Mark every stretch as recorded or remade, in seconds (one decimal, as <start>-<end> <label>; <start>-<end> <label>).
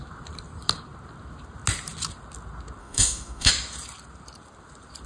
0.0-2.8 recorded; 2.8-3.5 remade; 3.5-5.1 recorded